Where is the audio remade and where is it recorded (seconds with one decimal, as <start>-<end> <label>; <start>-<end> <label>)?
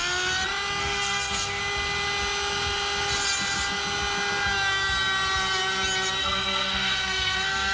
0.0-0.8 recorded; 0.8-1.6 remade; 1.6-6.2 recorded; 6.2-7.7 remade